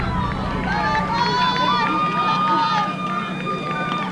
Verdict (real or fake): real